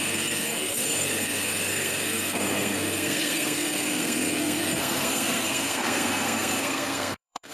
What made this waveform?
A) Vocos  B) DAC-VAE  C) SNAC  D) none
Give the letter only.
C